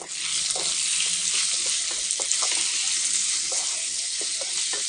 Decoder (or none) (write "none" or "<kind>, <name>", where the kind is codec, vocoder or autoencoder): none